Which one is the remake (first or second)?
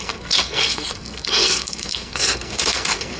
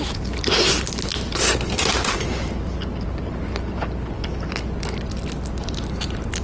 first